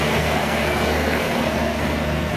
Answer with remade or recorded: remade